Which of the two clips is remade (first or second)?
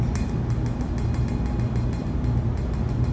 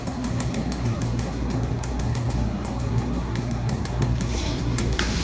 second